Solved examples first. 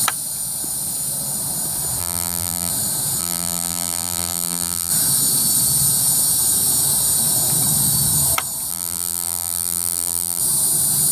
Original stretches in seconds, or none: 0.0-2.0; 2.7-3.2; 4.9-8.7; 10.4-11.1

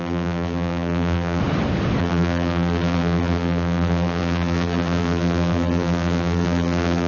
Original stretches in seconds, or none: 1.4-2.0

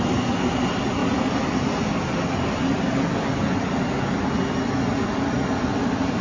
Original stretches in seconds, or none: 1.0-4.7

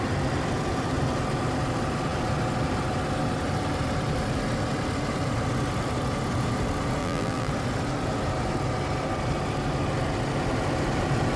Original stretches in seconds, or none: 0.0-7.0; 7.5-11.4